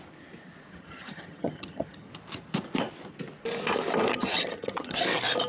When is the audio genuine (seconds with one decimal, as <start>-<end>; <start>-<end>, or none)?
0.0-0.7; 2.1-4.1; 5.0-5.5